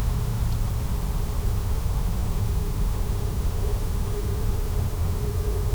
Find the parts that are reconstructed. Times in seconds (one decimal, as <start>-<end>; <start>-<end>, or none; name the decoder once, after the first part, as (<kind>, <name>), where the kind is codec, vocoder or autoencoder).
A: 0.0-0.4 (autoencoder, DAC-VAE); 1.4-5.7